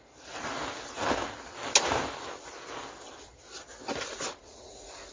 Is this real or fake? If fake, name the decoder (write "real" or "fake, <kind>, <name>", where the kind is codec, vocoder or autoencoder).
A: real